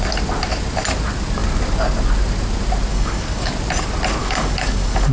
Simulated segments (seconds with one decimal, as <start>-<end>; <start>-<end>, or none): 2.9-3.5; 4.2-5.1